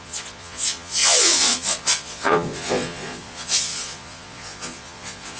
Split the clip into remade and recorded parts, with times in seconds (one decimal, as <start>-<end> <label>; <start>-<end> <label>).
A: 0.0-5.4 remade